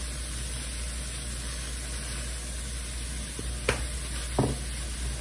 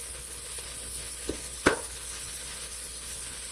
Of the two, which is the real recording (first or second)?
first